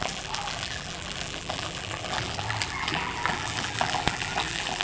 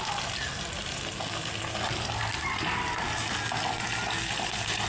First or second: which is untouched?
second